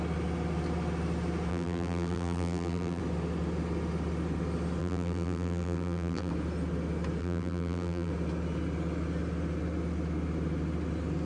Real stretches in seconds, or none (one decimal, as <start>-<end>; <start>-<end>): 0.0-1.5; 3.0-4.8; 6.3-7.2; 8.1-11.3